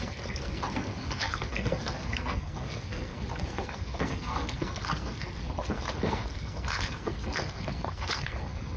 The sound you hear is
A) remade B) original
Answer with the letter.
A